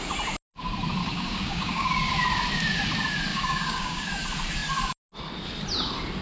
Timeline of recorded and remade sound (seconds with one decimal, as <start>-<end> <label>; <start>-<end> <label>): 0.0-1.0 recorded; 1.0-2.1 remade; 2.1-3.3 recorded; 3.3-4.1 remade; 4.1-6.2 recorded